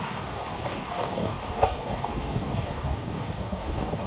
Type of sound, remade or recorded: remade